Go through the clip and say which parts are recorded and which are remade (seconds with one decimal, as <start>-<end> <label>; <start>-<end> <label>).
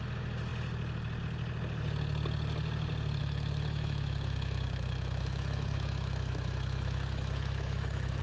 0.0-3.2 recorded; 3.2-8.2 remade